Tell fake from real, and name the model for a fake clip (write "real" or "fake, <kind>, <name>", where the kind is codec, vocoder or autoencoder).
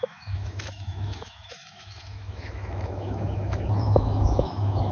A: fake, autoencoder, DAC-VAE